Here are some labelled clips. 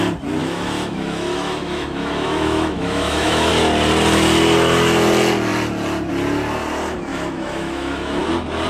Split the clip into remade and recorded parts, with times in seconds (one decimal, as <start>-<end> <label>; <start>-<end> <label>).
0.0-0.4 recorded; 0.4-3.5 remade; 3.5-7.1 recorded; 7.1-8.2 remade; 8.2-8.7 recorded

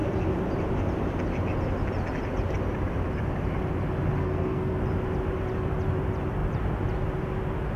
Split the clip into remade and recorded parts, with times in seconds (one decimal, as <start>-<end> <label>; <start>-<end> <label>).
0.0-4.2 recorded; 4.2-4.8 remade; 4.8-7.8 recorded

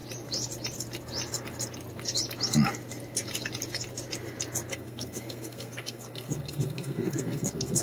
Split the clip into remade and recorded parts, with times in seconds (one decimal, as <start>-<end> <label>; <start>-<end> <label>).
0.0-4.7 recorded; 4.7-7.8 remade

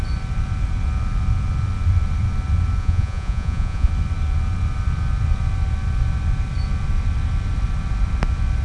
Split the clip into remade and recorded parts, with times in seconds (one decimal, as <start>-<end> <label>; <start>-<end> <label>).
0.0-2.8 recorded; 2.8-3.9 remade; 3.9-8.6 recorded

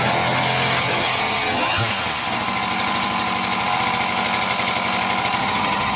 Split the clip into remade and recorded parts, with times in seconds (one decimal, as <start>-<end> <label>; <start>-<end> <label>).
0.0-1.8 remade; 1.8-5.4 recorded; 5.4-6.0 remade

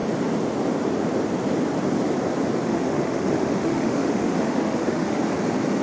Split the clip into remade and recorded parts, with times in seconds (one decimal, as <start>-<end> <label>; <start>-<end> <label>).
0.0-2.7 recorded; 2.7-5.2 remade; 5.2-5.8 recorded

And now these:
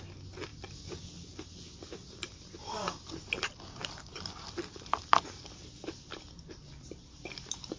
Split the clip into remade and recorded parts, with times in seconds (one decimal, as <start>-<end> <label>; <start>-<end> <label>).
0.0-7.8 recorded